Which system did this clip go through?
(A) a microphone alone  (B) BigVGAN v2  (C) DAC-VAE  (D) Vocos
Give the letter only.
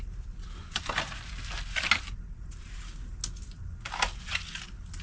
A